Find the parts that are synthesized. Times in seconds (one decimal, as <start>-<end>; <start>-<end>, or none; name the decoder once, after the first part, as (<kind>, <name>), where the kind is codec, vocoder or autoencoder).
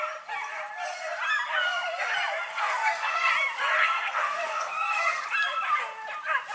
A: 2.5-3.3 (codec, SNAC); 3.8-5.2